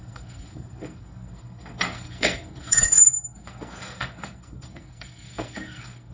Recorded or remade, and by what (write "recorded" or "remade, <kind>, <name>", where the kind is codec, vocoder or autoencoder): remade, codec, SNAC